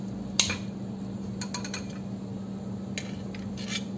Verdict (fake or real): real